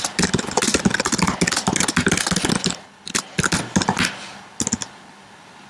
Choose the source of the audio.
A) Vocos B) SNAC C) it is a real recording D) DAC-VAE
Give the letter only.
C